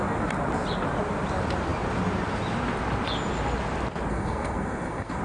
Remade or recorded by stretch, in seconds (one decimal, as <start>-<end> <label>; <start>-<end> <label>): 0.0-4.1 recorded; 4.1-5.2 remade